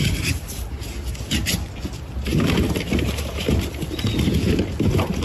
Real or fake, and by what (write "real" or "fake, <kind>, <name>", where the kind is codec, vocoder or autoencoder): real